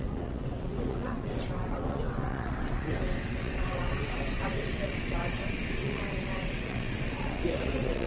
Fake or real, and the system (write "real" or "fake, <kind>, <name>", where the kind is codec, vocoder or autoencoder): fake, vocoder, WaveNeXt